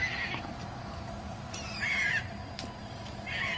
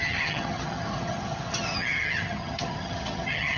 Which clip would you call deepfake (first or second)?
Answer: second